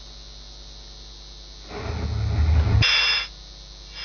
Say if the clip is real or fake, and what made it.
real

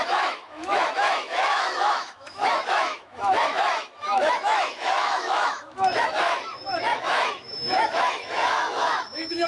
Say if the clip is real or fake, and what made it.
fake, autoencoder, DAC-VAE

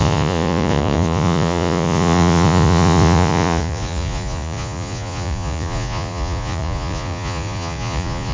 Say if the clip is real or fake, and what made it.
fake, vocoder, Vocos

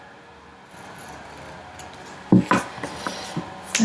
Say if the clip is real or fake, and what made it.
real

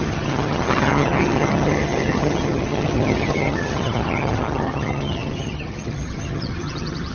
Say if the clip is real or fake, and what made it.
fake, vocoder, HiFi-GAN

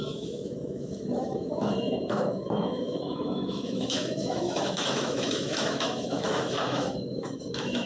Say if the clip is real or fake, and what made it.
fake, autoencoder, DAC-VAE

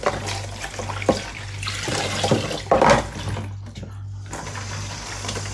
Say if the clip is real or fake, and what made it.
real